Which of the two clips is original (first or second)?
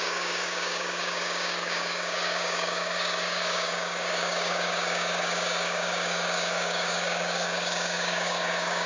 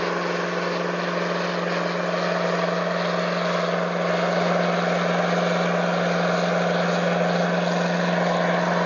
second